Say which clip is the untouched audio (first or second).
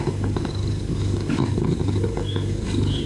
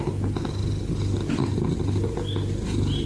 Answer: second